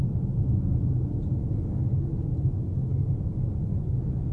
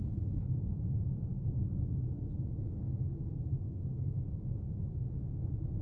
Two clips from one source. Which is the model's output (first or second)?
second